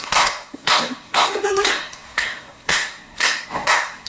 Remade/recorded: remade